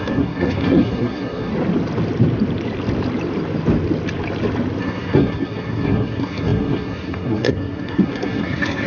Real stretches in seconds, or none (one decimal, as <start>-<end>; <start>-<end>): 1.5-4.8